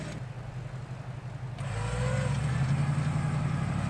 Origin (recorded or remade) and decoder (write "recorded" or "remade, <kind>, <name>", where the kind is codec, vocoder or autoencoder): recorded